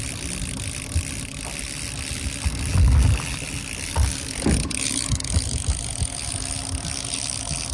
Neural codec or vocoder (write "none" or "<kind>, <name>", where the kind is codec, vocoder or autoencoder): none